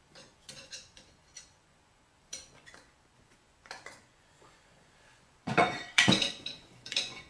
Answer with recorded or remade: remade